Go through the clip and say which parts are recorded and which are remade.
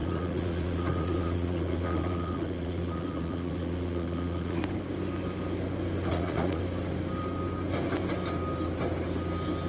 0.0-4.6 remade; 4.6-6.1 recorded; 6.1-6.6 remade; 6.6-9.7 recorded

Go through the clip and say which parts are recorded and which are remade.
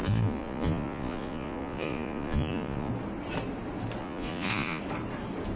0.0-2.9 remade; 2.9-4.0 recorded; 4.0-4.8 remade; 4.8-5.6 recorded